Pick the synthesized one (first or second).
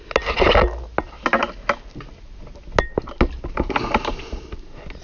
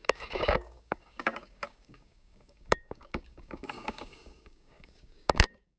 second